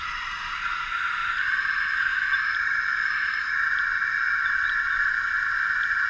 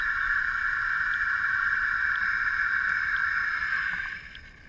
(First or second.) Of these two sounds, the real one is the first